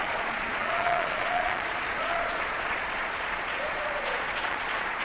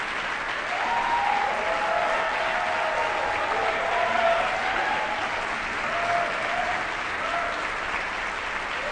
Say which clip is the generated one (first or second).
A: first